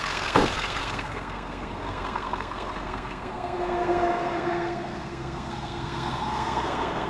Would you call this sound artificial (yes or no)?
yes